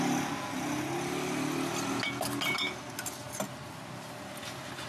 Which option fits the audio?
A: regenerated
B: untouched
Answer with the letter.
B